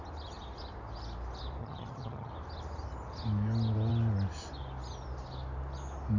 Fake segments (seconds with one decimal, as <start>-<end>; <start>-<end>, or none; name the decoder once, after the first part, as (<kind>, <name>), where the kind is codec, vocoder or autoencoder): 1.6-2.3 (vocoder, HiFi-GAN)